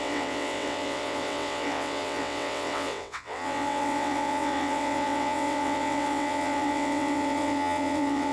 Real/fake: fake